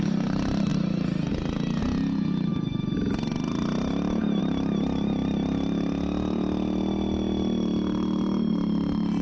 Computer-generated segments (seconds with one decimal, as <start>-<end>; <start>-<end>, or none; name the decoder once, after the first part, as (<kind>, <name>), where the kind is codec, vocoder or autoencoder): none